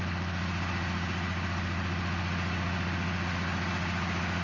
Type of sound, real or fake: real